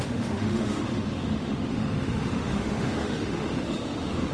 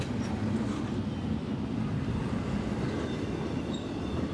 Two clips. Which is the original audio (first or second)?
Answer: second